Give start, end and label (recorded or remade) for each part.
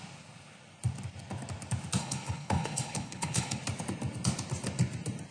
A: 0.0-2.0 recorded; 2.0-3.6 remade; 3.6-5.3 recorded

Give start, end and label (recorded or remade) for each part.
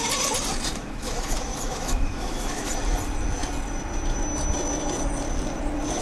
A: 0.0-0.7 recorded; 0.7-2.7 remade; 2.7-6.0 recorded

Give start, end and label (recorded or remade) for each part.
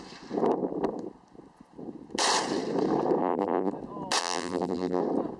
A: 0.0-3.2 recorded; 3.2-3.7 remade; 3.7-4.2 recorded; 4.2-5.0 remade; 5.0-5.4 recorded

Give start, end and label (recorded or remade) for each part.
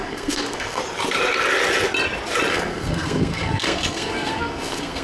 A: 0.0-0.8 remade; 0.8-2.5 recorded; 2.5-5.0 remade